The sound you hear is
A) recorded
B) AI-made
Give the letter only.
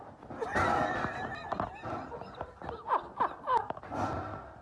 A